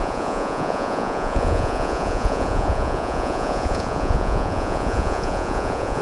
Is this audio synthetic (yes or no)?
yes